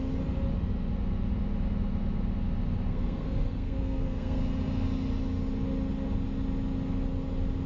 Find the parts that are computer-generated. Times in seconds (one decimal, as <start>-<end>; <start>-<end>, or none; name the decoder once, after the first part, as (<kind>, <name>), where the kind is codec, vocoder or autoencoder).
2.9-4.4 (codec, SNAC)